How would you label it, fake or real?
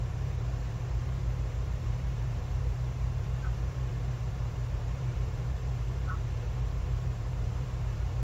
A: fake